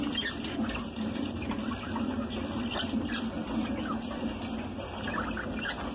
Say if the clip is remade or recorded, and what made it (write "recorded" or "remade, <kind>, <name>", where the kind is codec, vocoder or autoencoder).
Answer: recorded